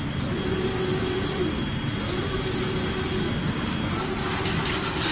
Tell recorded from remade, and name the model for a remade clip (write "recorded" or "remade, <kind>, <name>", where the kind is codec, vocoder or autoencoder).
recorded